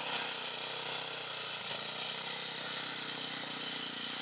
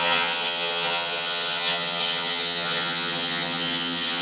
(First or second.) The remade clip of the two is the second